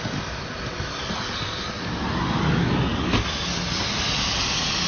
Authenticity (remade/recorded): recorded